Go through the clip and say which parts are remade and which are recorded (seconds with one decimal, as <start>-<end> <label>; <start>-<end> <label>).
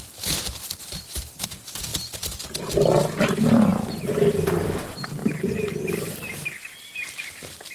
0.0-1.9 remade; 1.9-2.4 recorded; 2.4-5.2 remade; 5.2-6.7 recorded; 6.7-7.7 remade